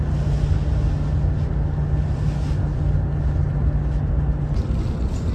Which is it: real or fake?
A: real